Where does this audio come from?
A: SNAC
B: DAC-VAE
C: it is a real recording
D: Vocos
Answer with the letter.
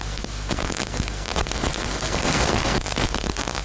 A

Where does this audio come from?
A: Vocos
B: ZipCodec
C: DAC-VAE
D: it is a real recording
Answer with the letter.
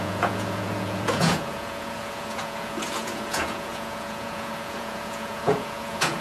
A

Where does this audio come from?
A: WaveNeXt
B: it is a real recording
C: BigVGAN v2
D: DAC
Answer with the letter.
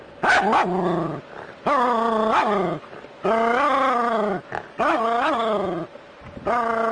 B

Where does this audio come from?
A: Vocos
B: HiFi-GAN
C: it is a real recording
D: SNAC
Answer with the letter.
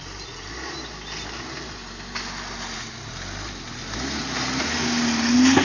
C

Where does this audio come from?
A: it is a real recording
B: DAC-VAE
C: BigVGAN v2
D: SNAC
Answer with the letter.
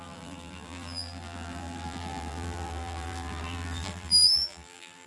C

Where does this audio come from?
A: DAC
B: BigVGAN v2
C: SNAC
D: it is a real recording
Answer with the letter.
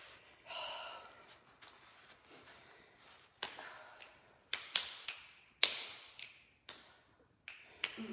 D